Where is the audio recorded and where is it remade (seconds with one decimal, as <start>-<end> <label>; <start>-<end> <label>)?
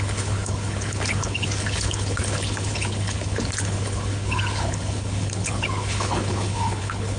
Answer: 0.0-7.2 remade